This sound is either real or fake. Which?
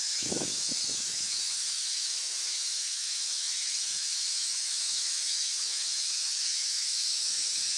fake